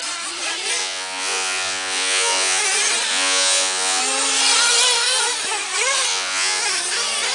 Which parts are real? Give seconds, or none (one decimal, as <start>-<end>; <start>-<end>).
0.0-0.8; 2.6-3.1; 4.0-6.1; 6.6-7.3